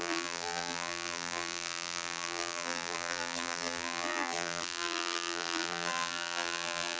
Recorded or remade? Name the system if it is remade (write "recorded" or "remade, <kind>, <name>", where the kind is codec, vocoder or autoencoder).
remade, vocoder, BigVGAN v2